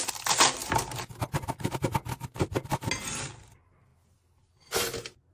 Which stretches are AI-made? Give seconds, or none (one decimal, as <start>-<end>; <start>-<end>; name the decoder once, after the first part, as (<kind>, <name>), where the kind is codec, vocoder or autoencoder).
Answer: none